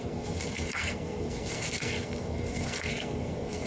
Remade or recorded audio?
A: remade